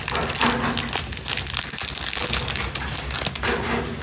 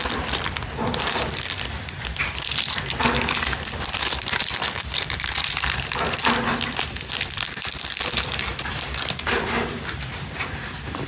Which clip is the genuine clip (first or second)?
first